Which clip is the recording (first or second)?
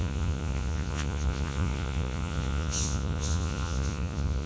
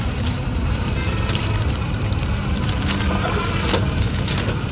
second